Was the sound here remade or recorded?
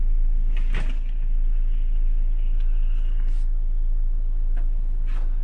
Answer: recorded